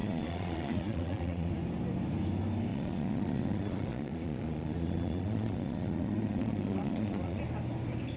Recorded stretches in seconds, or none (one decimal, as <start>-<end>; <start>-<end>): 1.5-2.7; 7.4-8.2